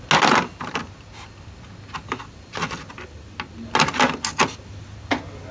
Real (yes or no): yes